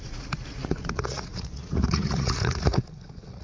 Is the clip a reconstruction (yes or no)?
yes